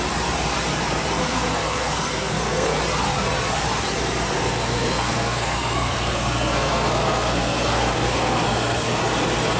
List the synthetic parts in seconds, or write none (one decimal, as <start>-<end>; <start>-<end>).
1.2-2.8; 4.4-9.0

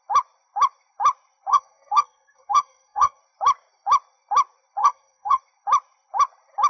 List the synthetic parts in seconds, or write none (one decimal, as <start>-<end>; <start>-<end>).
1.5-3.2; 4.8-5.4

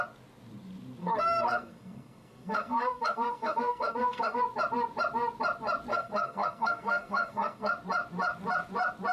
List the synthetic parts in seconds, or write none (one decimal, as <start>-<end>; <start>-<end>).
1.0-4.4; 5.9-7.7

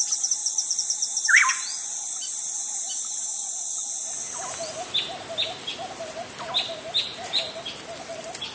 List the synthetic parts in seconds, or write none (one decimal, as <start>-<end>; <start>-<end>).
none

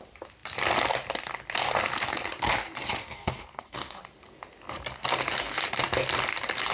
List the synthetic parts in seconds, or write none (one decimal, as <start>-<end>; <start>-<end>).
3.0-4.0

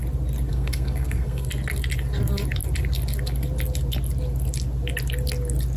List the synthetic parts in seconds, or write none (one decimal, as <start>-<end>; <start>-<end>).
0.5-1.5

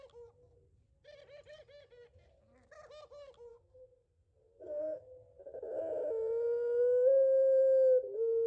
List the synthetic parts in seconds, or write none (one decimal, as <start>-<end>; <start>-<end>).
3.5-5.0

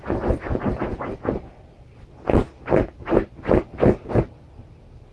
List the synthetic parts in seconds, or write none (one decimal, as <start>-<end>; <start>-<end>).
none